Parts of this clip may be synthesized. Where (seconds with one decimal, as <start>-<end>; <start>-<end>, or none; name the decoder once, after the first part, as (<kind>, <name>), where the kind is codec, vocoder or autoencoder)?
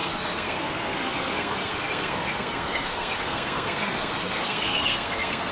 0.0-5.5 (codec, SNAC)